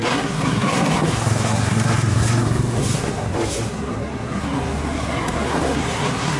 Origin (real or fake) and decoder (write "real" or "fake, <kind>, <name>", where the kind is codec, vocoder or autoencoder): fake, codec, SNAC